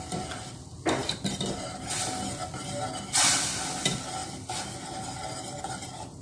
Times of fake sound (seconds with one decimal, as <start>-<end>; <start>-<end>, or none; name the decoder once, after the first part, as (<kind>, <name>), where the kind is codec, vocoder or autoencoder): none